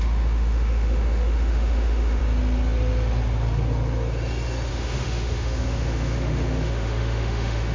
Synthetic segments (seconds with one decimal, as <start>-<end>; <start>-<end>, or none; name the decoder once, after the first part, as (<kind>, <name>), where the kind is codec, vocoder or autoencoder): 0.0-2.2 (autoencoder, DAC-VAE); 4.7-7.7